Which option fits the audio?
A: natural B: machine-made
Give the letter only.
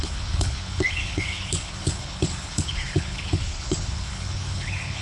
B